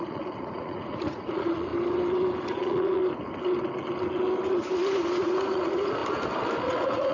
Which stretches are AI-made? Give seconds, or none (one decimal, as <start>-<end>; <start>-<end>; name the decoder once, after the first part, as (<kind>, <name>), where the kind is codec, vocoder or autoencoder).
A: 0.0-1.7 (vocoder, Vocos); 2.4-3.0; 5.2-6.0; 6.6-7.1

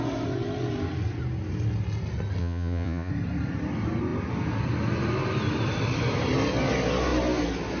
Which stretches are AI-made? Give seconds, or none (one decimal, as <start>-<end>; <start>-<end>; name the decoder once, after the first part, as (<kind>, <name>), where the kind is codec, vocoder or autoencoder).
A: 2.4-3.1 (vocoder, Vocos)

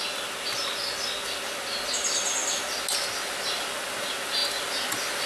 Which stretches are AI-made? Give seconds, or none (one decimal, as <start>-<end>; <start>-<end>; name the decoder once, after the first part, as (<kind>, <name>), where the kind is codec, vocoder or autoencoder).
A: none

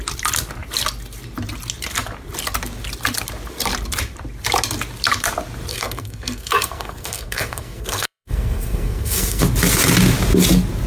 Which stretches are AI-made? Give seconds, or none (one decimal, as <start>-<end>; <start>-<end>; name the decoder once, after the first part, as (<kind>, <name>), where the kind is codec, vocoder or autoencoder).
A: 5.7-9.4 (codec, SNAC)

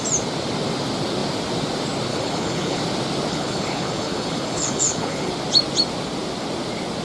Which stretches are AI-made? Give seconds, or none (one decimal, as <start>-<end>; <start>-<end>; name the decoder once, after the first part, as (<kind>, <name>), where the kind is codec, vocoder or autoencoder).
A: 2.1-2.8 (codec, HILCodec); 3.3-5.3

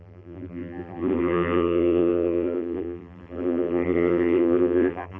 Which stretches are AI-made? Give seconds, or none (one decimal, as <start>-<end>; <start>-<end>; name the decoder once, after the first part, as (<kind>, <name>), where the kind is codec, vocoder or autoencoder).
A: 0.0-5.2 (vocoder, BigVGAN v2)

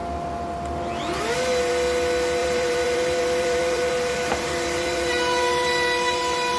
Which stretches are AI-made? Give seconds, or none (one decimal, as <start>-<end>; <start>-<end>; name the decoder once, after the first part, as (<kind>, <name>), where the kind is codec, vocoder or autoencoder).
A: 2.4-6.6 (vocoder, BigVGAN v2)

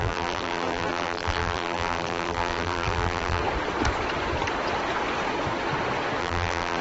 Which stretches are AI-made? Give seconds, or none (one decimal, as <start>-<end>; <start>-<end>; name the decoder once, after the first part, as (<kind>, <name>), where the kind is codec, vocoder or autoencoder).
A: 0.0-3.4 (vocoder, BigVGAN v2); 6.2-6.8